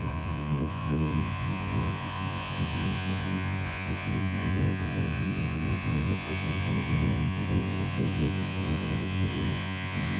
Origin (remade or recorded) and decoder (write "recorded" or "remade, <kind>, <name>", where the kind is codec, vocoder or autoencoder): remade, vocoder, Vocos